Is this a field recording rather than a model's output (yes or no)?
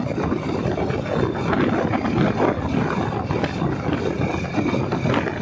yes